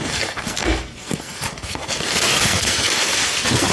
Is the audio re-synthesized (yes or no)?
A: yes